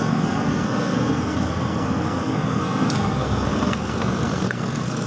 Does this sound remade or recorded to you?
remade